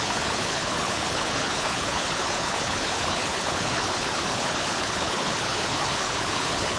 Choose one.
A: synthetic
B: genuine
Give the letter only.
A